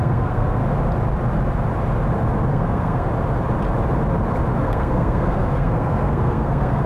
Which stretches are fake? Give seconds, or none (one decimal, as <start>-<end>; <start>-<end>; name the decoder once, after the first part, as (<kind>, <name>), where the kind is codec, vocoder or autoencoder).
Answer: 0.0-0.6 (codec, SNAC); 2.5-3.1; 4.6-6.9